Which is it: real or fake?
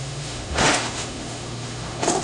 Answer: fake